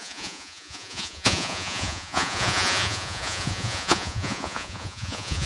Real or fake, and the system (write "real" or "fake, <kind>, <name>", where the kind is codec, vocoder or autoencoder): fake, vocoder, Vocos